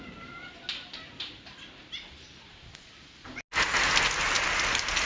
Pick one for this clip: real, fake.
real